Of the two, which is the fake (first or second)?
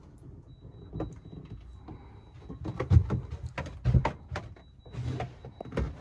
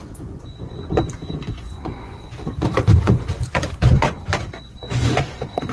second